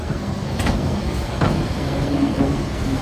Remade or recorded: remade